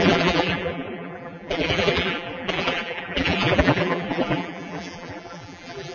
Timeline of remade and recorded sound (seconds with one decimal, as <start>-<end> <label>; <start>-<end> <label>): 0.0-5.9 remade